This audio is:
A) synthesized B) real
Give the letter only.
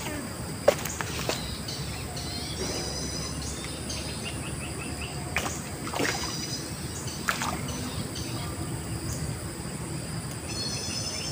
B